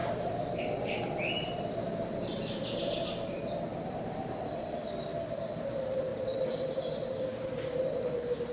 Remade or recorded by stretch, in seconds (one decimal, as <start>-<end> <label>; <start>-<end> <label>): 0.0-0.6 remade; 0.6-3.7 recorded; 3.7-4.3 remade; 4.3-6.1 recorded; 6.1-6.9 remade; 6.9-8.5 recorded